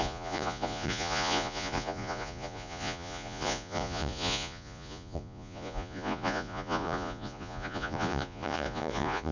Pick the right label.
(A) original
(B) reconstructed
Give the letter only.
B